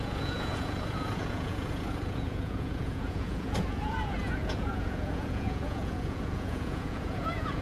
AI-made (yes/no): yes